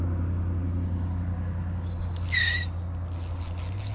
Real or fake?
real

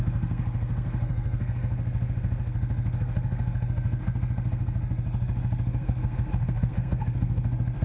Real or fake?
fake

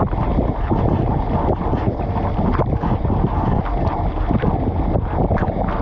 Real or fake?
real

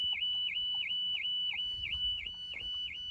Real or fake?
real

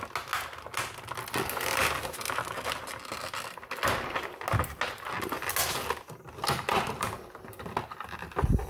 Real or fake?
real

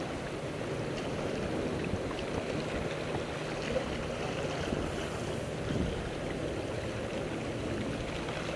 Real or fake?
real